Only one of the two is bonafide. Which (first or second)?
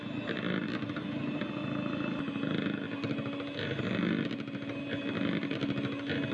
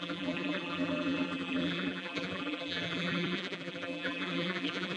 first